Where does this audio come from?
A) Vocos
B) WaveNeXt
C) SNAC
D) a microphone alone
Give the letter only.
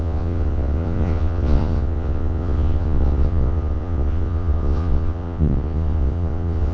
A